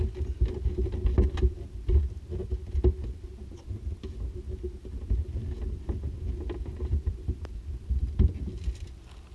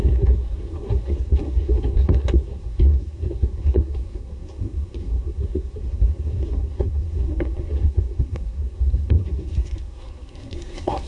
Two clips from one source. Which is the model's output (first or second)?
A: second